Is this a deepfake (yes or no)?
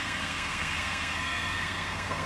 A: yes